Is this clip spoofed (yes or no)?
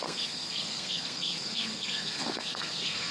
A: yes